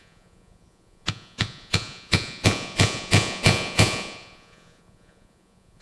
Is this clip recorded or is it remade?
remade